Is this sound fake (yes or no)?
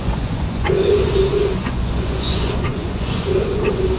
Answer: yes